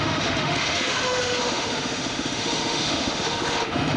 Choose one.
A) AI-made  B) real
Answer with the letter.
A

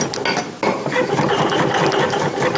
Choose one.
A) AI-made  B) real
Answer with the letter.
B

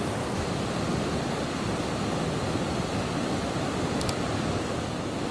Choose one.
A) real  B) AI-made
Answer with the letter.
A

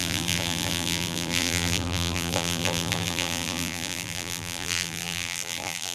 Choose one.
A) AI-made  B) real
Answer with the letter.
A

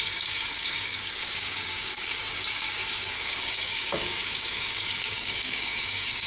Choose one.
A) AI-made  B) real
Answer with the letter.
A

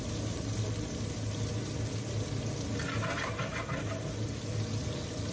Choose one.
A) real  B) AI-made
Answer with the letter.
A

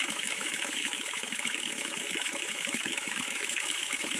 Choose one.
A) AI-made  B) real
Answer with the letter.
A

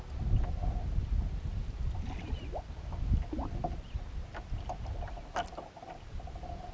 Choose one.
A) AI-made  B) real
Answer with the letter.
B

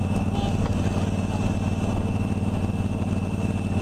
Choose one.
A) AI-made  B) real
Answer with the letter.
B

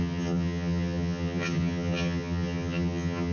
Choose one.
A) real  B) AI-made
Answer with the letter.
B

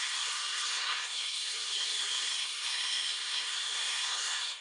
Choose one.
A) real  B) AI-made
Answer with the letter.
B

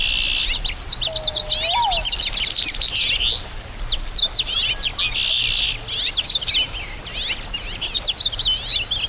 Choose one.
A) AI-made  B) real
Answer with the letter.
B